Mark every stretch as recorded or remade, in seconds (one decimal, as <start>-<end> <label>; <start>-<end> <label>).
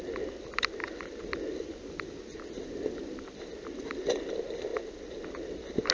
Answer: 0.0-5.9 recorded